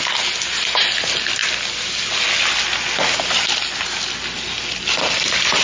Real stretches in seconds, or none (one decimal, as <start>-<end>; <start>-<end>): 0.0-5.6